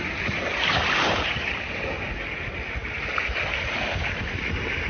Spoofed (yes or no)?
no